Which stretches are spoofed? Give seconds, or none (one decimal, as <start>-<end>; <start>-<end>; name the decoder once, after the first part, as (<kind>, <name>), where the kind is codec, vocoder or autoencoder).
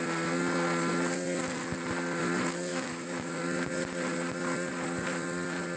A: 2.7-3.4 (autoencoder, DAC-VAE)